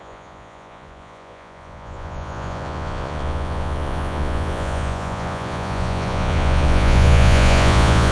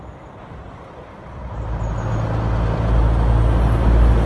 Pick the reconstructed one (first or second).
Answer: first